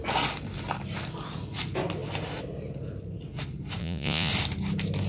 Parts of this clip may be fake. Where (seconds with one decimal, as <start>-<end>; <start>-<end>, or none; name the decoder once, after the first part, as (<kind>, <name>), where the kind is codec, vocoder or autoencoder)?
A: 3.8-4.3 (vocoder, Vocos)